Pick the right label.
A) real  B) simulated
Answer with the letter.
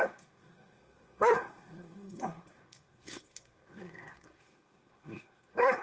B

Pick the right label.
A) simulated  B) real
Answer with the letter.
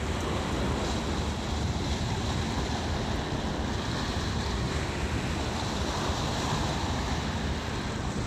B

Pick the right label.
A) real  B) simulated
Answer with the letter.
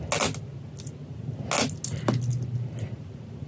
A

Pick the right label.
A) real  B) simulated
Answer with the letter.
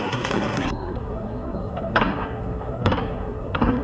B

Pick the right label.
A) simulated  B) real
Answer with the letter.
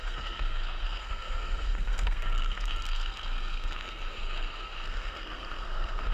A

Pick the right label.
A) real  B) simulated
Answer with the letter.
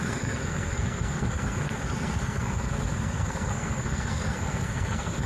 B